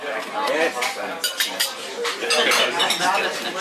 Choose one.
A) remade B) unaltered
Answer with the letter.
B